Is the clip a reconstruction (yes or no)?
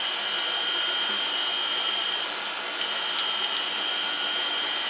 no